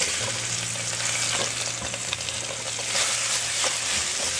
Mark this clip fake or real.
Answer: real